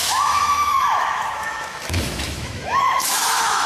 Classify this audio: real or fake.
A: fake